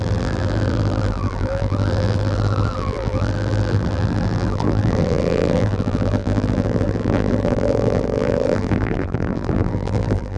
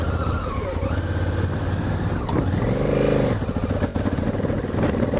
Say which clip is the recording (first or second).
second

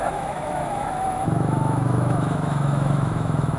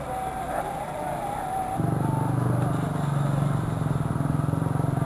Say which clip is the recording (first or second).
second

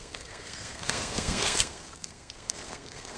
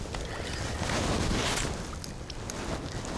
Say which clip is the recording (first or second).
second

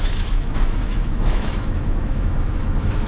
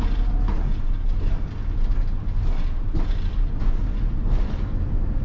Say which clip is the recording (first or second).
second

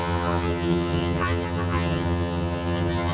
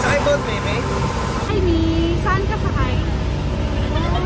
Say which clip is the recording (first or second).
second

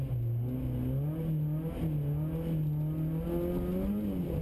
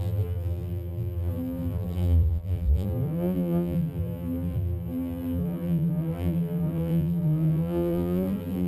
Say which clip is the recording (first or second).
first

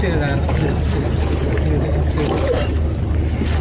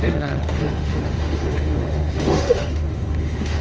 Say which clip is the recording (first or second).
first